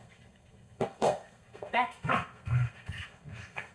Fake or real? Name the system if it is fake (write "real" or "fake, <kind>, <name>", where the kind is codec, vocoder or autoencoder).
fake, codec, SNAC